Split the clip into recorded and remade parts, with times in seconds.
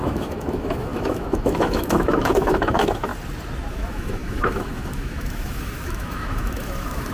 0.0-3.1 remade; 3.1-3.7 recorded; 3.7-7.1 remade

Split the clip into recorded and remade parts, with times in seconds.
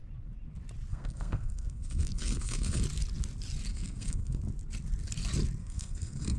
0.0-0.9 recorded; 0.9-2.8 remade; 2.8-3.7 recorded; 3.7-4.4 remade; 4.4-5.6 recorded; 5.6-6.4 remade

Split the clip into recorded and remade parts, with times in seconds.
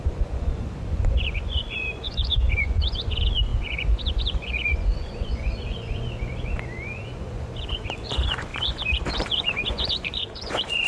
0.0-10.9 remade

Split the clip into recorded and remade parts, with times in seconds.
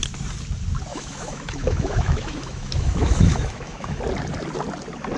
0.0-0.9 recorded; 0.9-4.0 remade; 4.0-5.2 recorded